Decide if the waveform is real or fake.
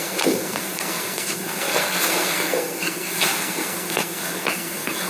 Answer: fake